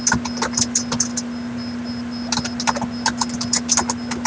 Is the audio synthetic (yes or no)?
no